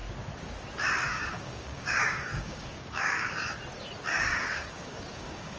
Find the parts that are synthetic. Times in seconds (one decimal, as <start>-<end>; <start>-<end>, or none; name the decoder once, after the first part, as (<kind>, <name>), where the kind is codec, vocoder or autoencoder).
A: 1.1-3.3 (codec, DAC); 4.1-5.6